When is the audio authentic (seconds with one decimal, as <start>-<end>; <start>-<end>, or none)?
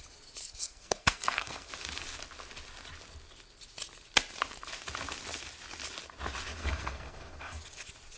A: 0.0-0.4; 1.7-6.6; 7.6-8.2